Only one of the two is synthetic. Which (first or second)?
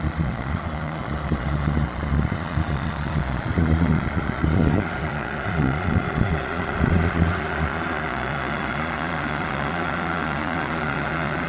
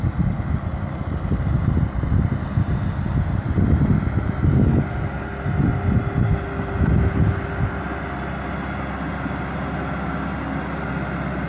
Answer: first